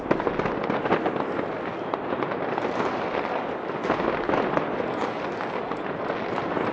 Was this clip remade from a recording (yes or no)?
no